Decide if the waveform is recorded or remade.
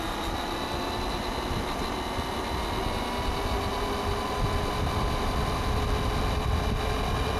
recorded